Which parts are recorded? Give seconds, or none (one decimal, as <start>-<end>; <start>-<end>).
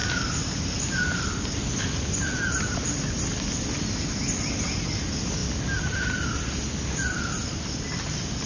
0.0-8.5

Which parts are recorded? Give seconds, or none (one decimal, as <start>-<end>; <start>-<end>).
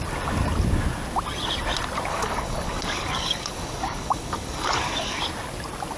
0.0-2.1; 5.2-6.0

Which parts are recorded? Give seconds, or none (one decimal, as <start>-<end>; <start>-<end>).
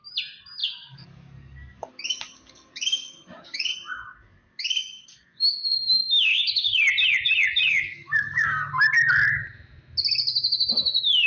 0.0-0.6; 3.7-4.2; 6.8-7.7; 8.7-11.3